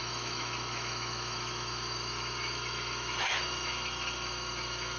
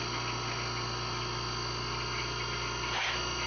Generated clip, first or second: first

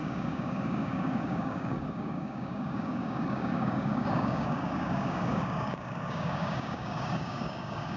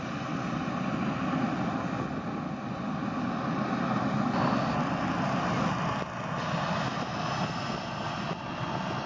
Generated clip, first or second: first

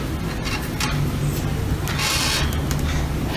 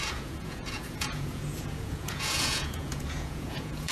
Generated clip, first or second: second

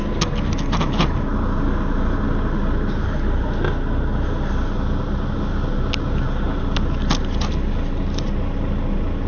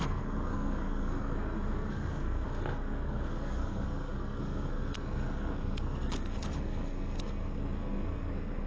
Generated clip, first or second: second